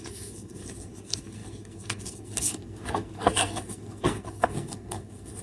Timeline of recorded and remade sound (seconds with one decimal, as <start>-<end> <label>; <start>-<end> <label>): 0.0-5.4 remade